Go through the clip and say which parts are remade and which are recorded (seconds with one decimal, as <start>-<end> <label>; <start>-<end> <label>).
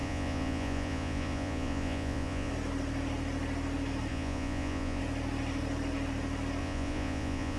0.0-2.5 remade; 2.5-4.1 recorded; 4.1-5.0 remade; 5.0-6.6 recorded; 6.6-7.6 remade